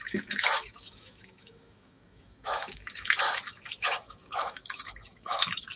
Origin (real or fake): fake